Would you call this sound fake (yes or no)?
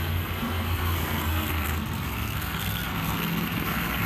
yes